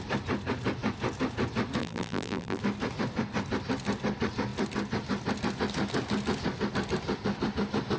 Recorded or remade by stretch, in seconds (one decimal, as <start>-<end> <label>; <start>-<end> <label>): 0.0-1.8 recorded; 1.8-2.6 remade; 2.6-8.0 recorded

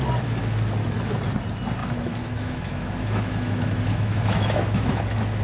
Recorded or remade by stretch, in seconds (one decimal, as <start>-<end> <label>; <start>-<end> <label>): 0.0-1.8 recorded; 1.8-5.0 remade; 5.0-5.4 recorded

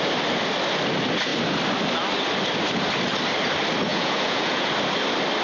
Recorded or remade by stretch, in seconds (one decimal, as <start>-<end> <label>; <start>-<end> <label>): 0.0-3.9 recorded; 3.9-4.7 remade; 4.7-5.4 recorded